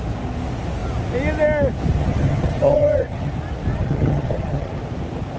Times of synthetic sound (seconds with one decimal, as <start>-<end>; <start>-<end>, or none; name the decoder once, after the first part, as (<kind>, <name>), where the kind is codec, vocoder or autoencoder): 2.0-3.3 (vocoder, HiFi-GAN); 3.7-4.8

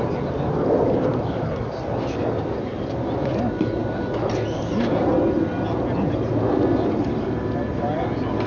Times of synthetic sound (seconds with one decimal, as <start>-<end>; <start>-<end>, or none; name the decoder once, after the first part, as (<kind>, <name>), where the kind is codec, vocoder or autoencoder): 0.0-3.8 (vocoder, BigVGAN v2); 7.7-8.5